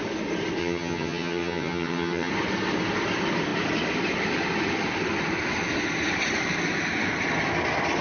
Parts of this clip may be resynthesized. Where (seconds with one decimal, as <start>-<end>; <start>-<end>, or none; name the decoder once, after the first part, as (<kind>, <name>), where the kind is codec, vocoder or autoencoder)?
0.6-2.3 (vocoder, HiFi-GAN)